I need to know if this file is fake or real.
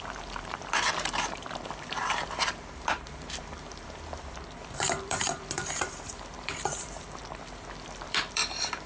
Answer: fake